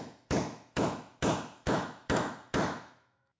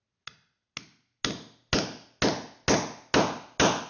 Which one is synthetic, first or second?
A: first